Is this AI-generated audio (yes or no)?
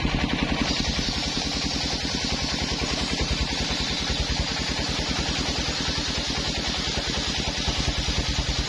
no